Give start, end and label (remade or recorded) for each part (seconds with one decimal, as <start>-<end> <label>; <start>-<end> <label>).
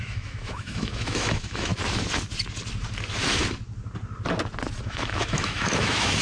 0.0-1.7 remade; 1.7-4.8 recorded; 4.8-6.2 remade